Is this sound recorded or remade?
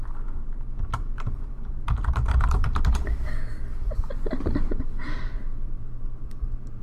remade